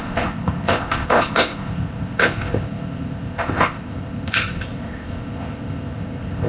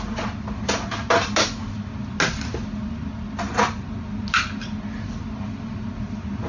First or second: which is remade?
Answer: first